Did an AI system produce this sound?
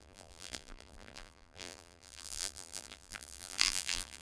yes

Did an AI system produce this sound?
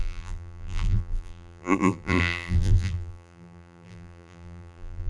yes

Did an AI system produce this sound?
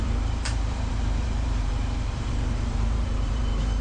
yes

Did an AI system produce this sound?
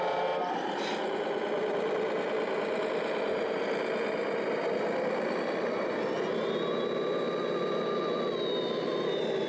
no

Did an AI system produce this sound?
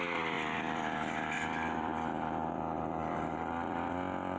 yes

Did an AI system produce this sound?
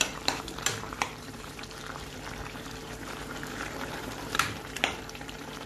yes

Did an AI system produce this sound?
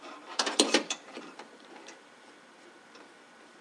yes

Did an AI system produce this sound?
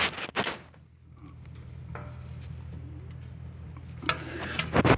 no